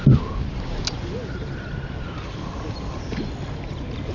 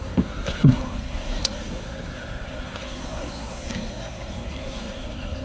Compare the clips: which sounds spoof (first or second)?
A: second